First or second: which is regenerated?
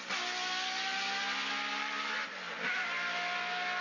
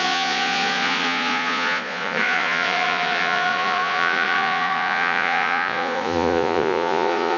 second